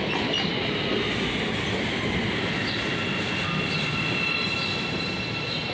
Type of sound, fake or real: real